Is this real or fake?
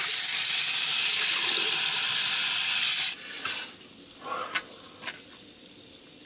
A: real